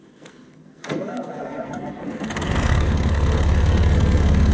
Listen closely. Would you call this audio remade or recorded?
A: remade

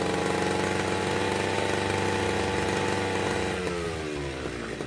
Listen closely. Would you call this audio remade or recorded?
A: recorded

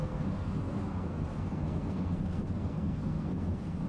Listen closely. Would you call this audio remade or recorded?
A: remade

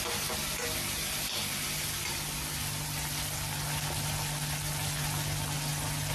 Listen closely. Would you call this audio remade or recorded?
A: recorded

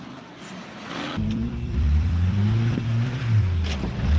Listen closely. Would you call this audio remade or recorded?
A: remade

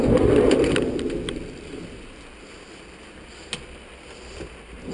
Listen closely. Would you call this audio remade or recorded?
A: recorded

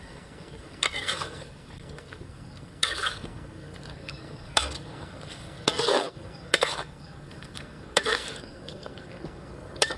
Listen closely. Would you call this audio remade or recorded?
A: remade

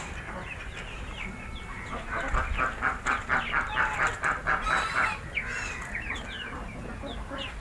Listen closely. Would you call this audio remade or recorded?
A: recorded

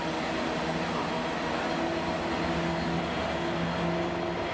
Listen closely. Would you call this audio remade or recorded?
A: recorded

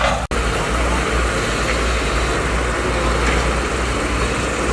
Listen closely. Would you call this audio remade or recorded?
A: recorded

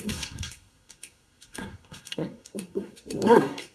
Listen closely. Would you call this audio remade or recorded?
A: remade